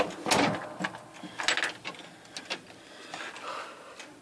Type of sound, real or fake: real